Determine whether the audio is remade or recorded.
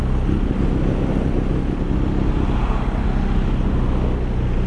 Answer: recorded